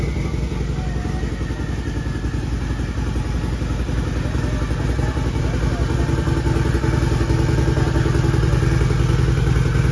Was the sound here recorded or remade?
recorded